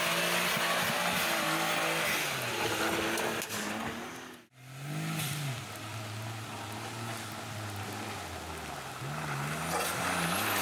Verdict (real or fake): real